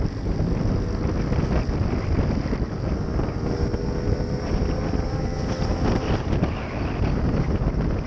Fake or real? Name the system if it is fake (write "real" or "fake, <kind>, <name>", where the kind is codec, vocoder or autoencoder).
real